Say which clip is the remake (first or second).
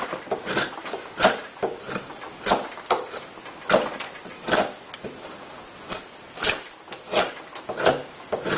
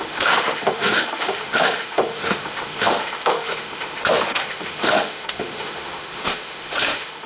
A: second